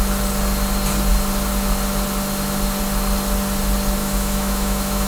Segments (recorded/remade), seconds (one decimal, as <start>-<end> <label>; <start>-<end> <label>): 0.0-4.0 recorded; 4.0-5.1 remade